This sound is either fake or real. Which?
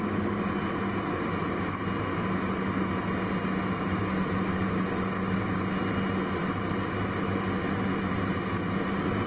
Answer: real